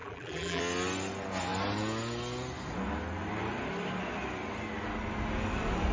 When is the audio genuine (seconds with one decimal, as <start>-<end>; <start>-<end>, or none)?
0.6-5.9